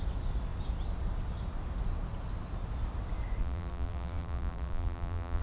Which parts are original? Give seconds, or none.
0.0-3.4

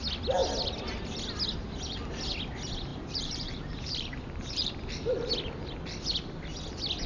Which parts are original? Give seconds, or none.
0.0-2.9; 5.3-7.1

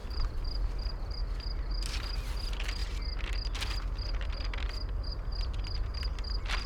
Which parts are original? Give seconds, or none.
1.2-6.7

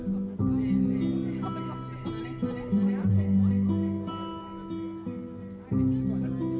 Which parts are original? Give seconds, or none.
0.0-1.1; 3.1-6.6

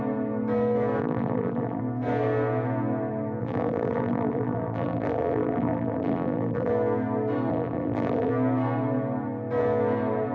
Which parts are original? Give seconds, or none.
0.0-1.0; 1.8-3.4; 6.7-7.5; 8.3-10.3

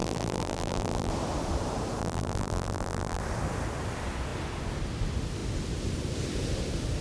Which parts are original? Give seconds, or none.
1.1-2.0; 3.2-7.0